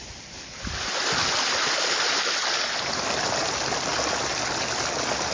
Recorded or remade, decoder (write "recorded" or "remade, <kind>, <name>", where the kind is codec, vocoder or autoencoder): recorded